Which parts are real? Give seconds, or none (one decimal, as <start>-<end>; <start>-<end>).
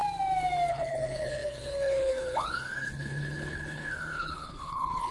0.0-0.7